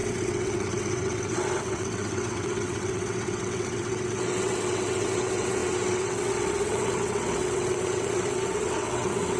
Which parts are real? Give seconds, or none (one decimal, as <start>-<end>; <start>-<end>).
none